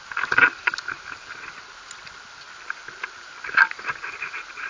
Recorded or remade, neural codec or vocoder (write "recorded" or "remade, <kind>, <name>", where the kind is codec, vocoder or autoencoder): recorded